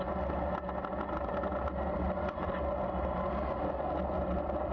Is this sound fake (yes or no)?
no